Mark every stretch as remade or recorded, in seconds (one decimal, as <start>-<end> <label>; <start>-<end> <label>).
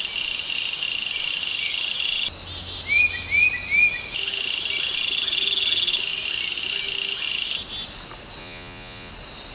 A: 0.0-8.4 recorded; 8.4-9.1 remade; 9.1-9.5 recorded